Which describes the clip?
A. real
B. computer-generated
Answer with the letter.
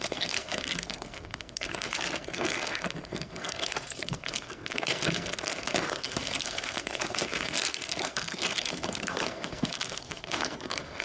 B